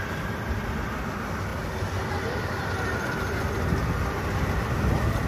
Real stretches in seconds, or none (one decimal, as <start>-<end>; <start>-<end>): 0.0-5.3